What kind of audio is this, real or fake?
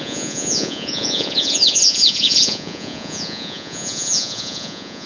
fake